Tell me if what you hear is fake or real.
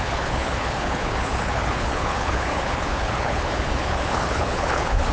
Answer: fake